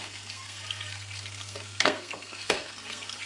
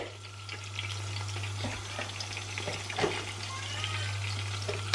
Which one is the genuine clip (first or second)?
second